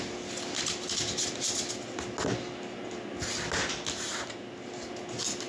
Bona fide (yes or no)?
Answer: yes